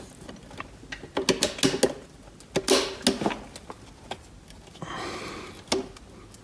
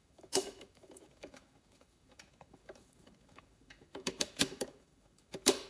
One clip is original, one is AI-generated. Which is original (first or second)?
first